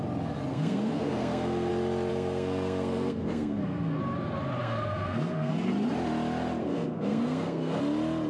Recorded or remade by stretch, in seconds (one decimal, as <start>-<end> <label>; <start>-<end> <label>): 0.0-0.5 recorded; 0.5-1.7 remade; 1.7-2.1 recorded; 2.1-4.0 remade; 4.0-4.6 recorded; 4.6-5.7 remade; 5.7-6.6 recorded; 6.6-7.8 remade; 7.8-8.3 recorded